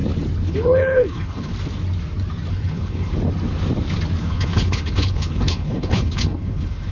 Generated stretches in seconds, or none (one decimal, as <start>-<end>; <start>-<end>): 0.5-1.5; 2.5-3.1; 4.2-6.9

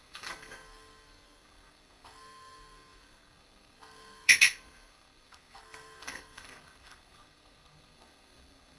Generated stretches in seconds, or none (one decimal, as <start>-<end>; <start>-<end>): 0.0-8.8